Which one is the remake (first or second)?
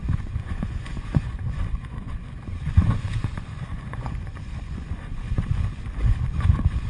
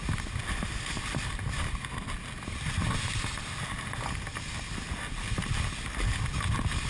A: first